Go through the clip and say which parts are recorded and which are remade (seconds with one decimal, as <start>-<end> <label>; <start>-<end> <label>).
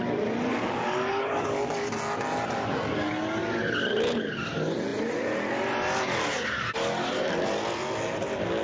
0.0-0.5 recorded; 0.5-1.9 remade; 1.9-8.6 recorded